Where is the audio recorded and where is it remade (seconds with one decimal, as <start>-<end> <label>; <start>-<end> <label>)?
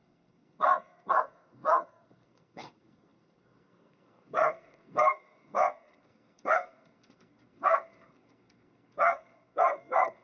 0.0-10.2 remade